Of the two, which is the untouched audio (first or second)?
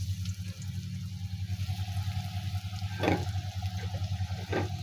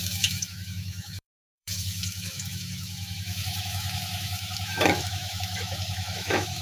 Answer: first